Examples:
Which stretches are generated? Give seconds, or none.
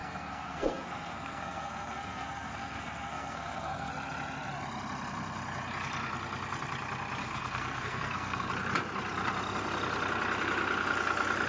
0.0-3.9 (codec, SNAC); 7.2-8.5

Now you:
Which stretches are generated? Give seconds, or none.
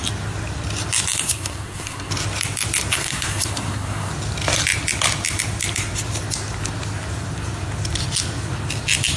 1.2-2.1 (codec, SNAC); 2.9-4.1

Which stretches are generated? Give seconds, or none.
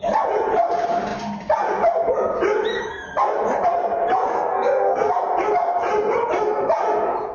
4.3-5.1 (codec, SNAC)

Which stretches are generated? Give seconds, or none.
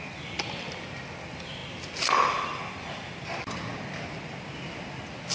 none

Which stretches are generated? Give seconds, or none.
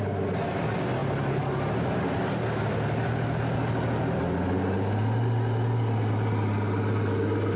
none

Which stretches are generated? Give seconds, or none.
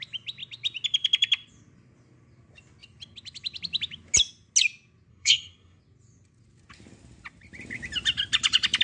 5.1-5.8 (codec, SNAC)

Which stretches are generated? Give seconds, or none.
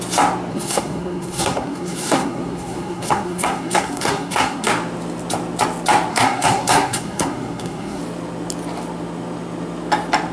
0.5-4.7 (codec, SNAC); 6.1-8.0